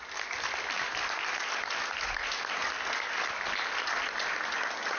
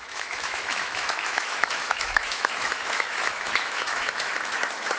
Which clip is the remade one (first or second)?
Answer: second